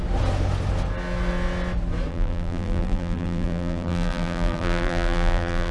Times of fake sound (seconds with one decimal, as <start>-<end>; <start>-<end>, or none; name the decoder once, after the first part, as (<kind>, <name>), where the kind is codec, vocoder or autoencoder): 2.1-5.7 (vocoder, BigVGAN v2)